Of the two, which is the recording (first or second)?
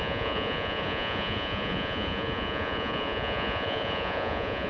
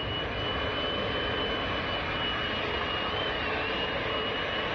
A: second